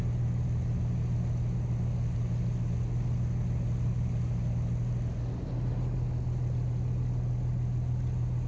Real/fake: real